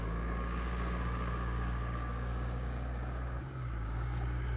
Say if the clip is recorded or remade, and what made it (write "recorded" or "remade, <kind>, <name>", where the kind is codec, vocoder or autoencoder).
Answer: remade, codec, DAC